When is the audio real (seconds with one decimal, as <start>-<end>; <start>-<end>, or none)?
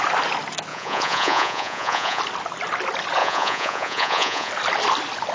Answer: 0.0-0.7; 2.2-3.2; 4.5-5.3